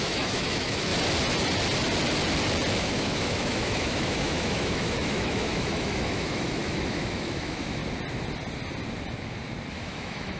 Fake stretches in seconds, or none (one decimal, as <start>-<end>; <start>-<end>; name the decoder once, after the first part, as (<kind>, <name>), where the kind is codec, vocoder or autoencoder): 0.0-0.9 (autoencoder, DAC-VAE); 2.8-7.8; 9.7-10.4